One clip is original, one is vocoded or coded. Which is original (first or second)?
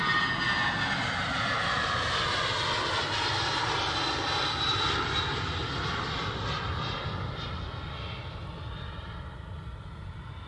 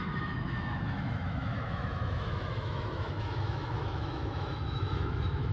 first